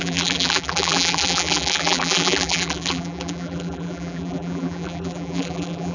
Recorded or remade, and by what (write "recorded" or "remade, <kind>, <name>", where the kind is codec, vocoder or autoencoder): remade, vocoder, BigVGAN v2